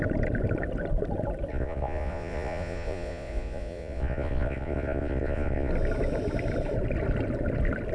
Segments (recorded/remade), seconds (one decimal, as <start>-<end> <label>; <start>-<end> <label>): 0.0-1.5 recorded; 1.5-5.7 remade; 5.7-7.9 recorded